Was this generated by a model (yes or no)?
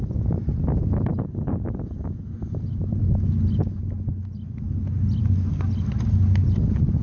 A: no